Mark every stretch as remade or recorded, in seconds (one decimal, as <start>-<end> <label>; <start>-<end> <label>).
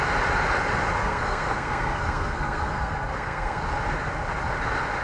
0.0-1.0 recorded; 1.0-3.6 remade; 3.6-5.0 recorded